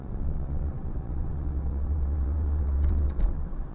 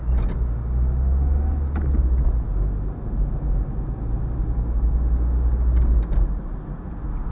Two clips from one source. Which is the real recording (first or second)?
second